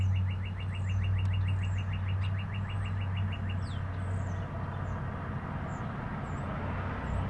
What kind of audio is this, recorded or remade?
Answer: recorded